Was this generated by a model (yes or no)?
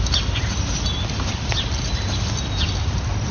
no